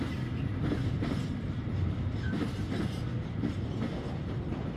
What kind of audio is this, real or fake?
real